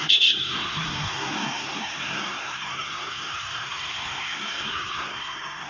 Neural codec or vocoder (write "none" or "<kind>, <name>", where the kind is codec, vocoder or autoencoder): codec, SNAC